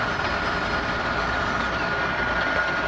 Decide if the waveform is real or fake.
real